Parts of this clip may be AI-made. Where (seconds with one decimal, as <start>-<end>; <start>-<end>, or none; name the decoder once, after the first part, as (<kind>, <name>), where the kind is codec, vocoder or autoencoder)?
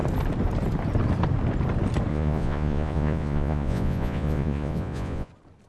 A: 2.1-5.3 (vocoder, Vocos)